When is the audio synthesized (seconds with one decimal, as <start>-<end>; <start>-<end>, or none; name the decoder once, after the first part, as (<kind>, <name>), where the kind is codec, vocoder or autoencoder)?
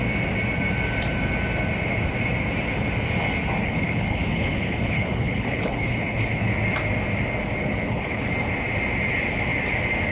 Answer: 3.6-6.5 (codec, HILCodec); 7.6-8.2